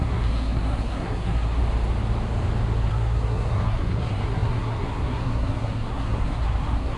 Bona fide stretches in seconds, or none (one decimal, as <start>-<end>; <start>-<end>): 1.6-2.9